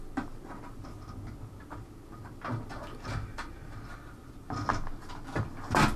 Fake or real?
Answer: real